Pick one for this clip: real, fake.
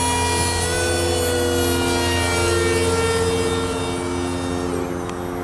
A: real